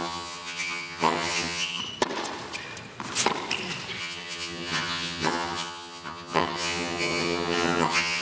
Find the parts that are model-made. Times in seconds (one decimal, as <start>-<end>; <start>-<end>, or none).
0.0-1.8; 4.0-8.2